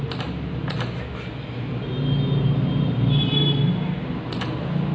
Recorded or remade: recorded